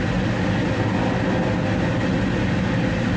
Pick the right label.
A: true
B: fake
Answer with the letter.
A